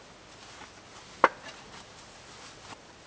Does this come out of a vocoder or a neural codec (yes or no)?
no